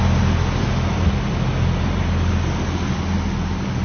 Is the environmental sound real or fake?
real